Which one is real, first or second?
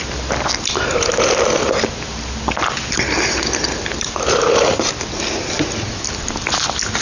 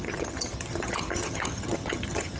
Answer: first